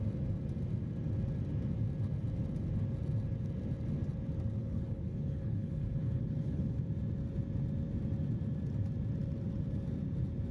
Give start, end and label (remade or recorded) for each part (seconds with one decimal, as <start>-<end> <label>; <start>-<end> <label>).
0.0-4.6 recorded; 4.6-6.8 remade; 6.8-10.5 recorded